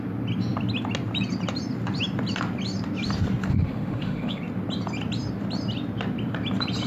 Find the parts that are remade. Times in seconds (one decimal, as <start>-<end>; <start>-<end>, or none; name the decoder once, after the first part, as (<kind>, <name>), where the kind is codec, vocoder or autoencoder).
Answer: 3.5-4.4 (autoencoder, DAC-VAE)